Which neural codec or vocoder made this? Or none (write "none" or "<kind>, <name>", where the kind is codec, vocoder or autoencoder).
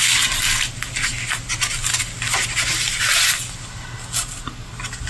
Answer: none